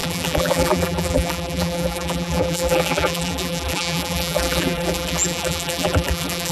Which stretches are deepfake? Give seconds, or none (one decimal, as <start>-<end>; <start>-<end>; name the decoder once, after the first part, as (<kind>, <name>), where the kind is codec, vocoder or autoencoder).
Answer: 0.0-6.5 (vocoder, BigVGAN v2)